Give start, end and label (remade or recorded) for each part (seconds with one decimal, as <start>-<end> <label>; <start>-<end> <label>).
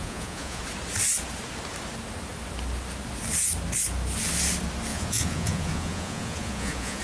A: 0.0-0.6 remade; 0.6-4.9 recorded; 4.9-7.0 remade